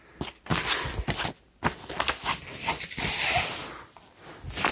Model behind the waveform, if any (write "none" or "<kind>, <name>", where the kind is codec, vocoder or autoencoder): none